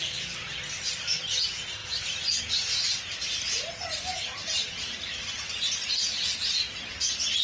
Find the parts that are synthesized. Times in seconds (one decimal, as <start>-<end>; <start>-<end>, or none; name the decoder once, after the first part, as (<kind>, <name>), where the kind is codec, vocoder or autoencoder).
none